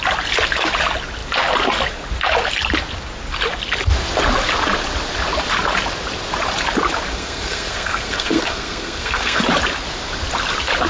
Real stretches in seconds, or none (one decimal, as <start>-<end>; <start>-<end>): 0.0-7.1; 9.4-10.9